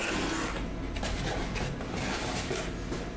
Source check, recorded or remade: recorded